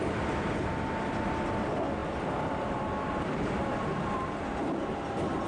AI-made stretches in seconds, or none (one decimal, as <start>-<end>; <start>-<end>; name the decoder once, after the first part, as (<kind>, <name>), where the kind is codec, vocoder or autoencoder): 2.0-4.6 (vocoder, BigVGAN v2)